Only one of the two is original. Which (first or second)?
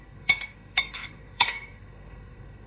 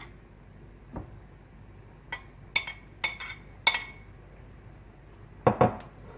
second